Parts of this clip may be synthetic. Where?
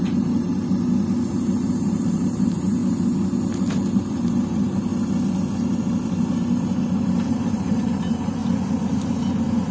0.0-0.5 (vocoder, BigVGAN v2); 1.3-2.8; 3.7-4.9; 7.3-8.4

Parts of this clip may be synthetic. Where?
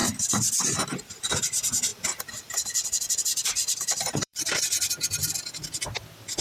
1.9-4.6 (vocoder, BigVGAN v2)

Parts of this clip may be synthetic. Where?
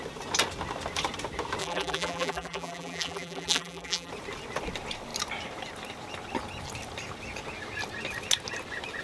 1.6-4.1 (vocoder, BigVGAN v2)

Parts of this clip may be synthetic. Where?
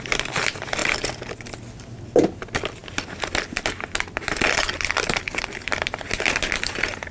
none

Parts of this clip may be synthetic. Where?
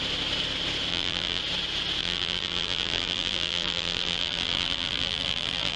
0.9-1.4 (vocoder, BigVGAN v2); 2.0-5.8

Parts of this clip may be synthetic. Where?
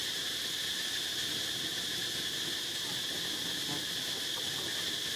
3.1-5.2 (vocoder, BigVGAN v2)